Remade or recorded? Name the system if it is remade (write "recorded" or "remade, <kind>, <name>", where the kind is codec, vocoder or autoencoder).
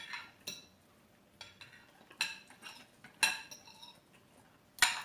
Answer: recorded